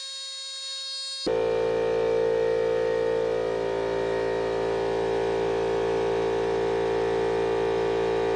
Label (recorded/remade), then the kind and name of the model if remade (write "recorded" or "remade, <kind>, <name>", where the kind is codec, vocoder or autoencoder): recorded